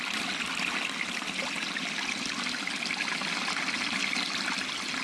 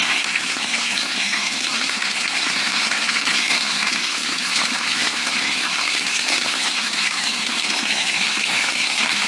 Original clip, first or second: first